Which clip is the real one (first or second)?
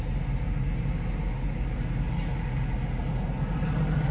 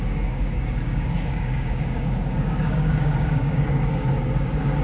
first